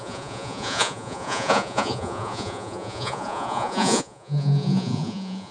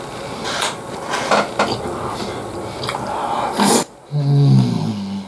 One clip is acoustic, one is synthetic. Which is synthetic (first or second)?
first